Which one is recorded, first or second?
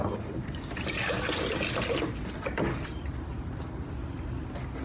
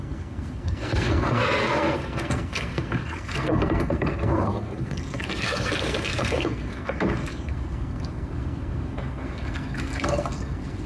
first